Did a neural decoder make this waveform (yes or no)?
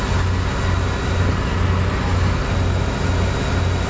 no